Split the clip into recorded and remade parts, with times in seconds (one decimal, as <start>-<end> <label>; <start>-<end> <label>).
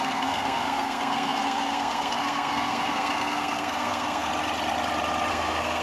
0.0-4.3 remade; 4.3-5.3 recorded; 5.3-5.8 remade